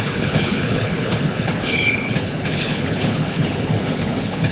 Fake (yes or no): yes